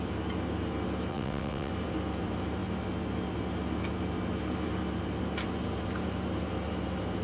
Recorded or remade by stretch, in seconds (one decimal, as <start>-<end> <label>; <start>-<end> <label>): 0.0-1.1 recorded; 1.1-1.7 remade; 1.7-7.2 recorded